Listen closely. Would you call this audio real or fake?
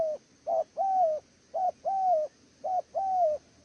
real